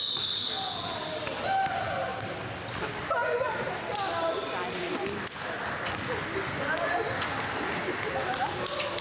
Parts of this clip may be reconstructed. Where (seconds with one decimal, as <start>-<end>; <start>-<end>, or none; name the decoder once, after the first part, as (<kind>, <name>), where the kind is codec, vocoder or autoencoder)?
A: none